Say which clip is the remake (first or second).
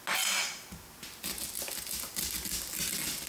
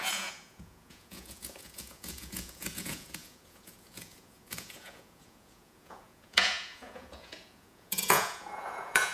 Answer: second